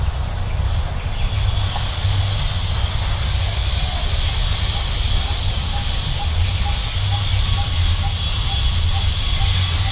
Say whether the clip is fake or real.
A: real